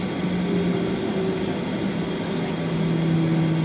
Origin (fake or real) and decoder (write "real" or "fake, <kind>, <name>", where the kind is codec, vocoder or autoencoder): real